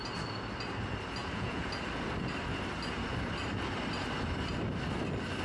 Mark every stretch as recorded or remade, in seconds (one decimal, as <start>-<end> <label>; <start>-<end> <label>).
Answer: 0.0-1.2 recorded; 1.2-1.7 remade; 1.7-5.4 recorded